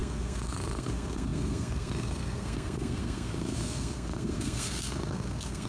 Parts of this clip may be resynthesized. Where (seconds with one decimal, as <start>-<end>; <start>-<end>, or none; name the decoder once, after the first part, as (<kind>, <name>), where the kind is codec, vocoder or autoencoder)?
0.0-5.7 (codec, SNAC)